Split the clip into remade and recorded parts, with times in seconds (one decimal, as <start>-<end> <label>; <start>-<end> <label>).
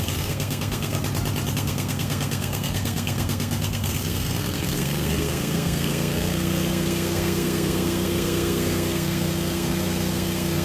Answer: 0.0-1.0 remade; 1.0-1.5 recorded; 1.5-10.6 remade